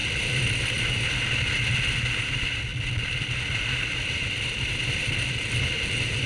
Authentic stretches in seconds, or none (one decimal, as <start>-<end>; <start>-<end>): 0.0-2.7

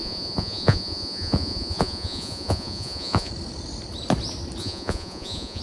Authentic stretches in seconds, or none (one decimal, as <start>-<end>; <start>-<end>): 3.3-4.6

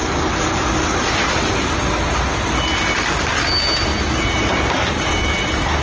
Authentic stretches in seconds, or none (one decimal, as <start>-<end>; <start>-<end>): 0.0-5.8

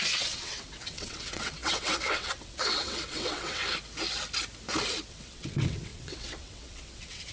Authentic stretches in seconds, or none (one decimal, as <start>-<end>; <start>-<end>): 3.6-5.1

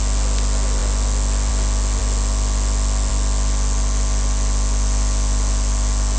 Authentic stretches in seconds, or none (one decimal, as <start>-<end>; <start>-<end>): 0.0-6.2

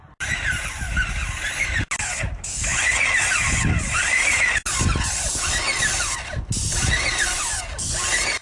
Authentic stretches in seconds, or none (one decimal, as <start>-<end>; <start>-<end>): 0.0-8.4